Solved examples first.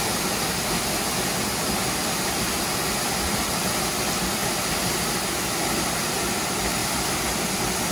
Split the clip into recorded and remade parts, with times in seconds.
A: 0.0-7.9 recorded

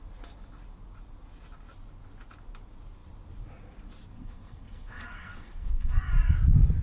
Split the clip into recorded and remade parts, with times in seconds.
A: 0.0-4.2 recorded; 4.2-5.9 remade; 5.9-6.8 recorded

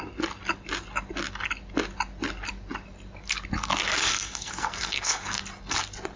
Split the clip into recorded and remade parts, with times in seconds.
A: 0.0-4.1 recorded; 4.1-5.4 remade; 5.4-6.2 recorded

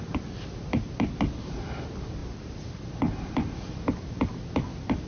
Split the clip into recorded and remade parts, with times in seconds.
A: 0.0-5.1 recorded

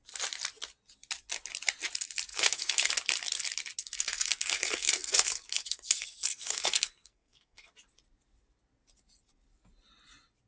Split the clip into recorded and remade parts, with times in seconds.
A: 0.0-2.3 recorded; 2.3-2.9 remade; 2.9-3.8 recorded; 3.8-7.7 remade; 7.7-10.5 recorded

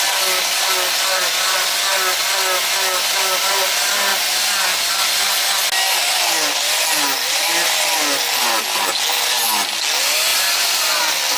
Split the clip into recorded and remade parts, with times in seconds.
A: 0.0-11.4 recorded

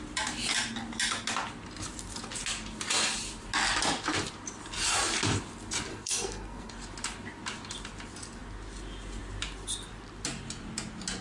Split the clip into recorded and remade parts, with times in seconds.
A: 0.0-5.9 recorded; 5.9-6.7 remade; 6.7-11.2 recorded